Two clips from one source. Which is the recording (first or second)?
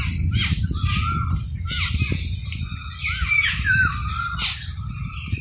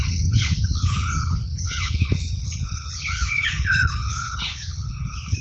first